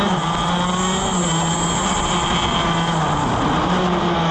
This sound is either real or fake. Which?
real